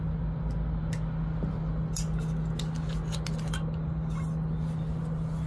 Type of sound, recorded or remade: recorded